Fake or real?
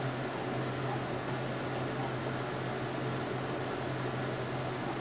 real